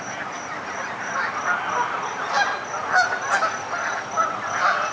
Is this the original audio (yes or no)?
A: yes